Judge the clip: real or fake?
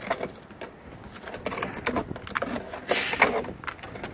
real